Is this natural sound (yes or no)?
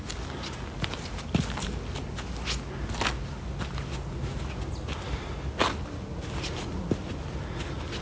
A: yes